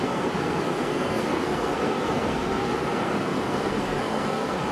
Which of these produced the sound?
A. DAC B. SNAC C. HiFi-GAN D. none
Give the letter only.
B